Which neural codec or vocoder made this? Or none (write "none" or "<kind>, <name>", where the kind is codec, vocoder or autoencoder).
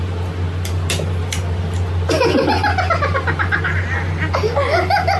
none